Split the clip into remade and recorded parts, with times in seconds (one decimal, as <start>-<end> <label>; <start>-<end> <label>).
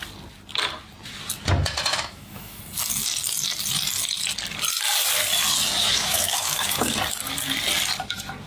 0.0-1.9 recorded; 1.9-2.6 remade; 2.6-5.8 recorded; 5.8-6.9 remade; 6.9-8.5 recorded